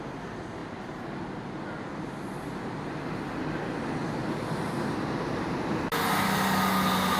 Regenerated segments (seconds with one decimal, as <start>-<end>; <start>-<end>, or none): none